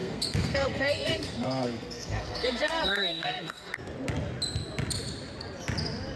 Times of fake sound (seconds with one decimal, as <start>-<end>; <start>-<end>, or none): 0.0-3.7